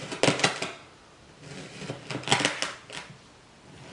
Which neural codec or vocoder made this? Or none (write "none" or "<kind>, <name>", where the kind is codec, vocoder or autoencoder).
none